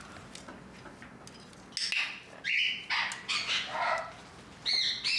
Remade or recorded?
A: recorded